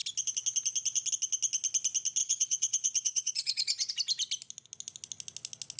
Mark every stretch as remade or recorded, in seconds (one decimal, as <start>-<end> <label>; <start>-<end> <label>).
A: 0.0-2.2 recorded; 2.2-3.9 remade; 3.9-5.8 recorded